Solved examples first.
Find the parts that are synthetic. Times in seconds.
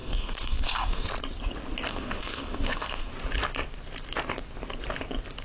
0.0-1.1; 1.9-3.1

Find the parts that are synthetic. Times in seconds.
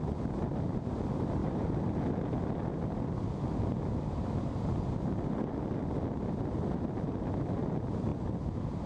1.4-2.0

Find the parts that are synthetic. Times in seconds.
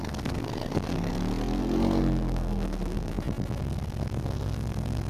0.0-1.1; 1.6-3.1; 3.6-5.1